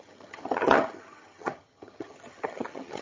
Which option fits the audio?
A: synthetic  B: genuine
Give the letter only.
A